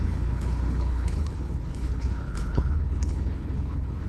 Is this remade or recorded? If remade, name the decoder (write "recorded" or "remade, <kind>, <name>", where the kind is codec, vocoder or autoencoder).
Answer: remade, codec, HILCodec